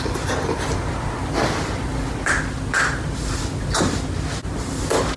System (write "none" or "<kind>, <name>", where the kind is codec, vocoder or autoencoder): none